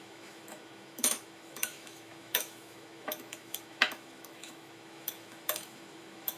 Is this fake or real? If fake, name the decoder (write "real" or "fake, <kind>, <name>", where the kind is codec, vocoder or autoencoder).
fake, autoencoder, DAC-VAE